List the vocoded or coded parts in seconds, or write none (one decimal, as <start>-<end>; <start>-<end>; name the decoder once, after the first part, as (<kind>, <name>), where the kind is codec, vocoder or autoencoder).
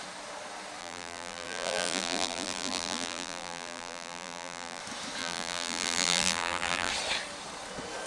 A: 0.8-4.8 (vocoder, BigVGAN v2); 5.2-6.9